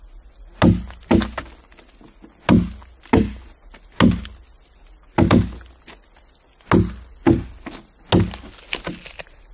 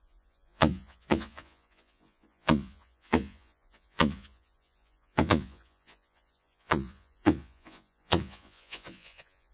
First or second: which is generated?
second